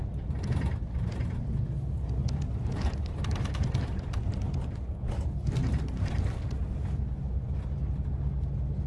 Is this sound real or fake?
real